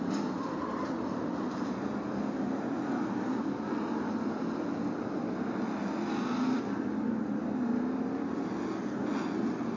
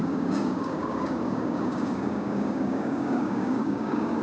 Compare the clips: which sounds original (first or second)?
first